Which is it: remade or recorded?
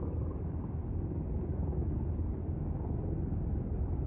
recorded